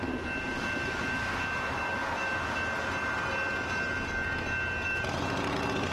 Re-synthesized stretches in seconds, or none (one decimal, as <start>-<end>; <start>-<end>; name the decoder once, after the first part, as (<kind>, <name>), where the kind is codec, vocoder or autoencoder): none